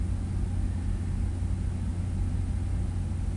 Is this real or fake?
real